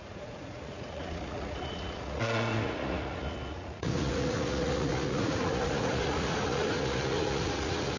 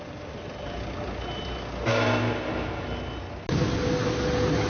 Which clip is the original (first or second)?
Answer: second